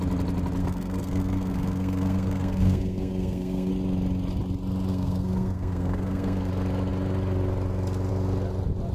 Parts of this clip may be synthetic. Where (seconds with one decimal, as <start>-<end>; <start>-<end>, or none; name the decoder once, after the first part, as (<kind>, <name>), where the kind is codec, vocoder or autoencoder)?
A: 0.6-3.7 (codec, SNAC); 4.9-6.5